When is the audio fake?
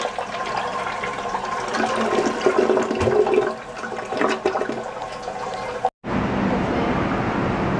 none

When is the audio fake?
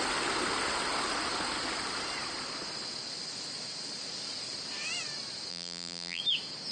5.5-6.2 (vocoder, BigVGAN v2)